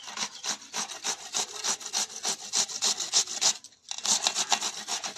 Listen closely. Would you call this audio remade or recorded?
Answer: recorded